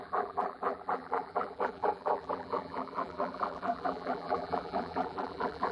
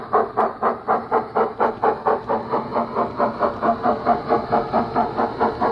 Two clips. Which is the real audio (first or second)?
second